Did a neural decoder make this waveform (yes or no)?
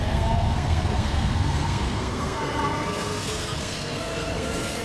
yes